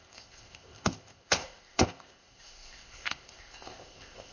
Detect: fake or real fake